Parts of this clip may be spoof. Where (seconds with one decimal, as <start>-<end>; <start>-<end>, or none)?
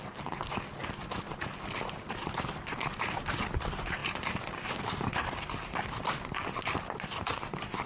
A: none